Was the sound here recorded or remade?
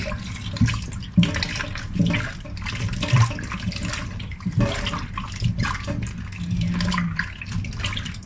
recorded